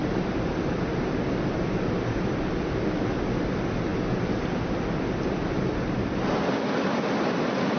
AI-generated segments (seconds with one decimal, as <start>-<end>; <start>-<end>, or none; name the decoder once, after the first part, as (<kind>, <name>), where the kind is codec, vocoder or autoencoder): none